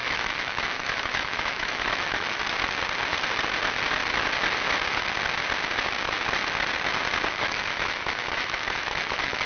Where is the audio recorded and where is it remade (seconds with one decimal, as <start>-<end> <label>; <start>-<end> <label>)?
0.0-2.4 remade; 2.4-7.3 recorded; 7.3-9.5 remade